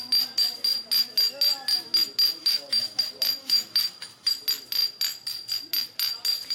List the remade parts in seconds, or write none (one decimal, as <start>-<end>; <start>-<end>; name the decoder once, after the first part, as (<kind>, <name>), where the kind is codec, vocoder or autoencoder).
2.4-3.0 (autoencoder, DAC-VAE); 3.4-4.3